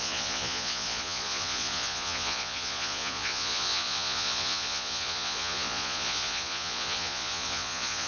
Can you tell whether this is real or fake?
fake